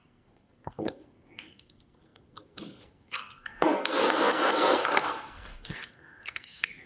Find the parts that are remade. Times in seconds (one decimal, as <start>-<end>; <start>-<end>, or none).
0.0-6.9